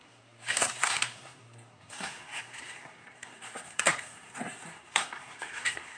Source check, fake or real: fake